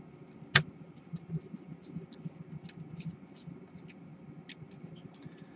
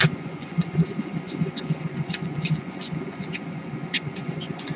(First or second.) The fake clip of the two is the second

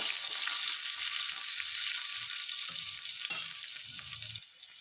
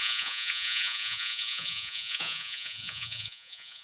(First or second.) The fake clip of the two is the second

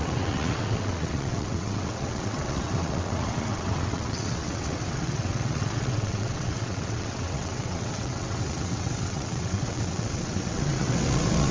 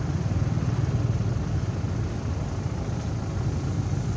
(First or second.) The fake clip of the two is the first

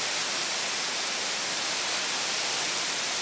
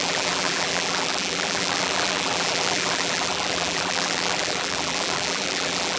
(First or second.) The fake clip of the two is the second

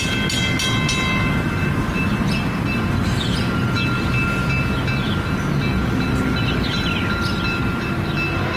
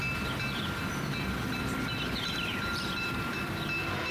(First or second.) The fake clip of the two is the second